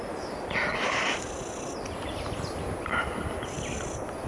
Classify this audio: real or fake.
real